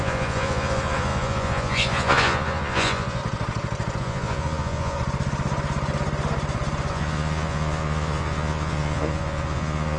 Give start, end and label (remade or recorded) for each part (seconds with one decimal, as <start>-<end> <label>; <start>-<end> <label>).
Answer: 0.0-3.2 remade; 3.2-4.0 recorded; 4.0-5.0 remade; 5.0-6.9 recorded; 6.9-10.0 remade